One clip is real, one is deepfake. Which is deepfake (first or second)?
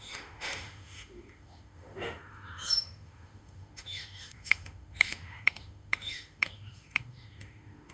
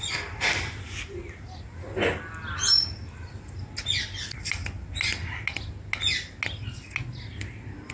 first